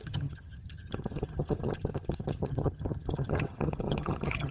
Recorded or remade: remade